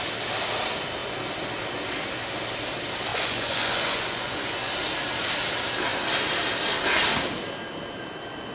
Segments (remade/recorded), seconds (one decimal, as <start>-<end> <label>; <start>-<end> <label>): 0.0-3.1 recorded; 3.1-4.7 remade; 4.7-8.5 recorded